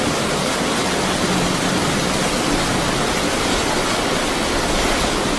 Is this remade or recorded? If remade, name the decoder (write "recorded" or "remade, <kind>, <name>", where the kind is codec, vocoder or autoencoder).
recorded